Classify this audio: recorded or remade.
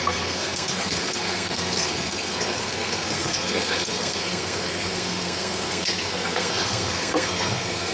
remade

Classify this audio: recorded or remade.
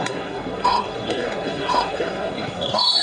remade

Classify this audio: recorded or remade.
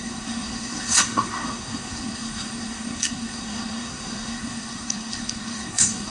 remade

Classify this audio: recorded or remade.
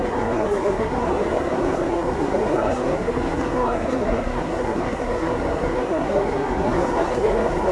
remade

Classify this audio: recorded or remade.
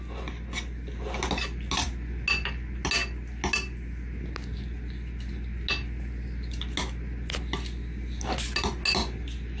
recorded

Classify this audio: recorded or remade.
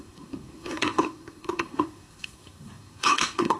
remade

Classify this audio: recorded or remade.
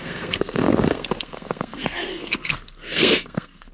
remade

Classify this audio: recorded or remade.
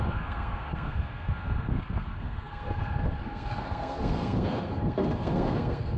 remade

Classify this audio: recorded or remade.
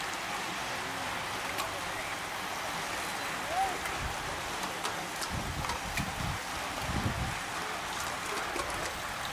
recorded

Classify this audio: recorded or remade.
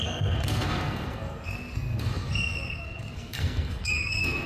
remade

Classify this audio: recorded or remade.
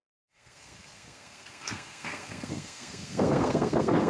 remade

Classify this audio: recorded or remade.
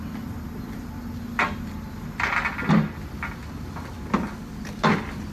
recorded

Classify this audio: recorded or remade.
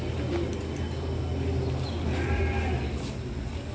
recorded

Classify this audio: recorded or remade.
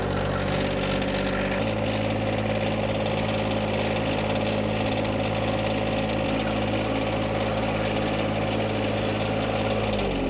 recorded